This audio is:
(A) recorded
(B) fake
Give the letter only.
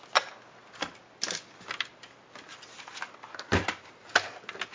A